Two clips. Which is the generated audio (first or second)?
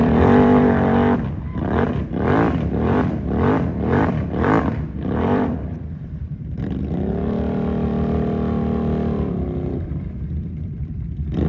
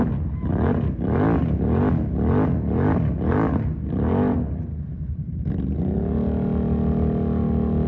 first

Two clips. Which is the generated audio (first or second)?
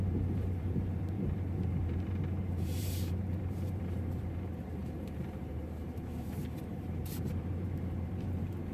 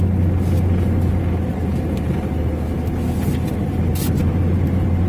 first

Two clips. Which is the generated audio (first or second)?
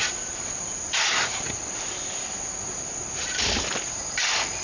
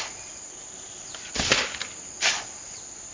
first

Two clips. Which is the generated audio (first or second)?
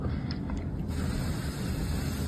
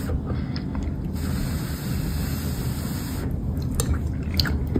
first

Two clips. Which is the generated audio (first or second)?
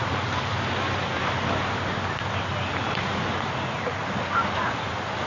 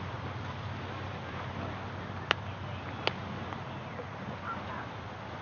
first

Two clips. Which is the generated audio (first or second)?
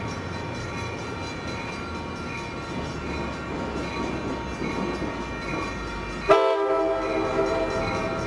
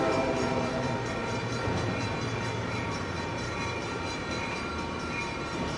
second